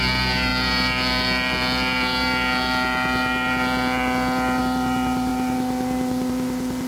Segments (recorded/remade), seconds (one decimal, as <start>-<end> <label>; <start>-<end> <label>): 0.0-6.9 recorded